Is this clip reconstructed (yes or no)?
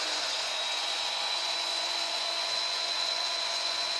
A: yes